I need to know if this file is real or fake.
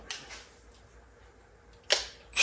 real